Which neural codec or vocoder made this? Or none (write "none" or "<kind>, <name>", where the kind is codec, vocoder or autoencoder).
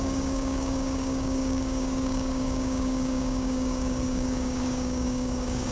codec, DAC